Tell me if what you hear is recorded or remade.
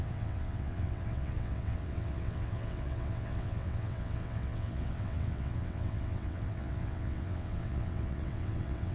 remade